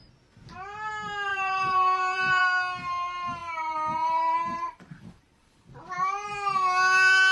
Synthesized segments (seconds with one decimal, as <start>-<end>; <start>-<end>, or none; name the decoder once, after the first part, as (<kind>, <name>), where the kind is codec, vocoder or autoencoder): 1.3-2.4 (vocoder, BigVGAN v2); 3.4-5.6